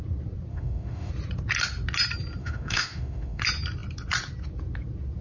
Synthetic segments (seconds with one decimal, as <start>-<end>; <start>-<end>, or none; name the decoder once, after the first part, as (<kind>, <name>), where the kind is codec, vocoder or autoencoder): 0.5-1.1 (autoencoder, DAC-VAE); 2.4-3.4